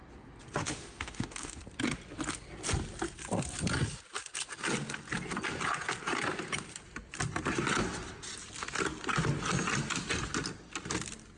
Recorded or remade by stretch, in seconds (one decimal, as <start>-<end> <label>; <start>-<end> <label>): 0.0-0.6 recorded; 0.6-1.6 remade; 1.6-11.4 recorded